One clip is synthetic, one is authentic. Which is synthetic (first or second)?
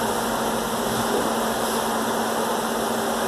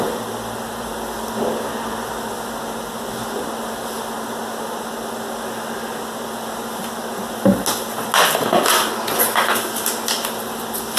first